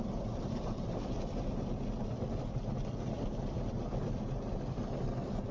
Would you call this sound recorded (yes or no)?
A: yes